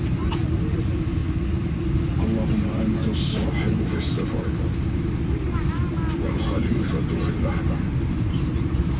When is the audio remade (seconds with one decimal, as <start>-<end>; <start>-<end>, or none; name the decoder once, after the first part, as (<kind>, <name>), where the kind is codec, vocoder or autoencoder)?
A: 0.0-1.2 (vocoder, BigVGAN v2); 4.9-5.8; 8.1-9.0